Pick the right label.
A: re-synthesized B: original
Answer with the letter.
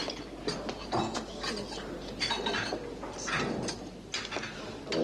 B